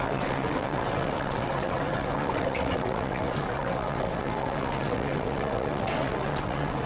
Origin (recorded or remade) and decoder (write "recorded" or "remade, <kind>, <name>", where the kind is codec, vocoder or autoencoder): remade, vocoder, WaveNeXt